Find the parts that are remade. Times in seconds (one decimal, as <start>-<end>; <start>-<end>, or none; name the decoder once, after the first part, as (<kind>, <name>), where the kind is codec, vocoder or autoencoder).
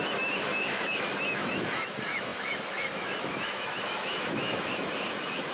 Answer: 0.0-5.5 (autoencoder, DAC-VAE)